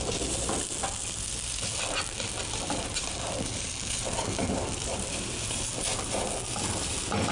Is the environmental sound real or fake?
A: real